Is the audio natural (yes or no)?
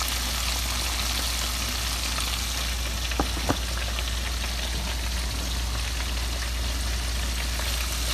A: yes